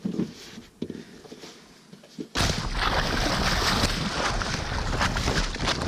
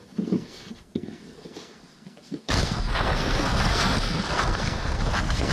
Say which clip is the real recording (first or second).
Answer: first